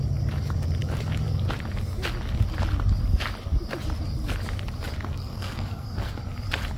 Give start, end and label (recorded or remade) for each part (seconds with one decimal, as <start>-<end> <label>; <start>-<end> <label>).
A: 0.0-5.1 recorded; 5.1-6.2 remade; 6.2-6.8 recorded